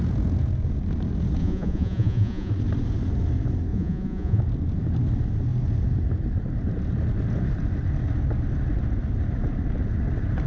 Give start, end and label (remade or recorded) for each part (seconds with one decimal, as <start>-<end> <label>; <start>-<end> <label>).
0.0-1.4 recorded; 1.4-2.5 remade; 2.5-3.7 recorded; 3.7-4.4 remade; 4.4-10.5 recorded